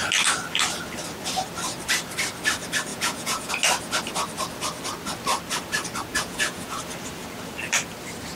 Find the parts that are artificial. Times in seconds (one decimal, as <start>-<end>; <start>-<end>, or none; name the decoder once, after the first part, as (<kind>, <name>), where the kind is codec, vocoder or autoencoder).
2.9-3.5 (vocoder, Vocos); 6.1-6.8